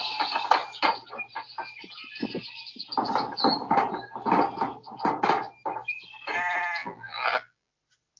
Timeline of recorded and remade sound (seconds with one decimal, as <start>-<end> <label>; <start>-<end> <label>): 0.0-6.8 recorded; 6.8-7.7 remade; 7.7-8.2 recorded

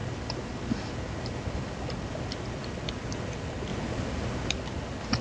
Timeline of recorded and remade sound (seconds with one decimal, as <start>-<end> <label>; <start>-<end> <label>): 0.0-2.3 remade; 2.3-5.2 recorded

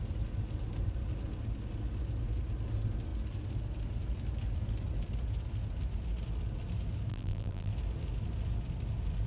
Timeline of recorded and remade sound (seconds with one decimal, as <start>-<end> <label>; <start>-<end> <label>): 0.0-7.1 recorded; 7.1-7.7 remade; 7.7-9.3 recorded

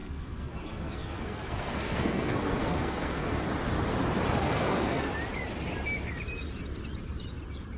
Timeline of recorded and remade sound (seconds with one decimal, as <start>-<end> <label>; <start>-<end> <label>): 0.0-3.4 remade; 3.4-4.4 recorded; 4.4-5.1 remade; 5.1-7.8 recorded

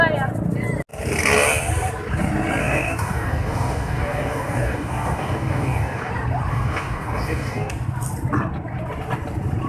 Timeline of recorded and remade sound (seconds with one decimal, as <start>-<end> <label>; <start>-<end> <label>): 0.0-2.6 recorded; 2.6-6.1 remade; 6.1-6.5 recorded; 6.5-7.7 remade; 7.7-9.7 recorded

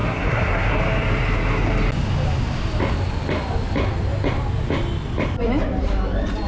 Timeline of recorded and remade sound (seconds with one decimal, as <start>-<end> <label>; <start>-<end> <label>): 0.0-0.8 remade; 0.8-6.5 recorded